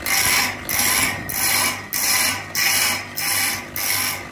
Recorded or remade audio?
recorded